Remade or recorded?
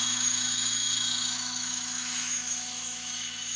remade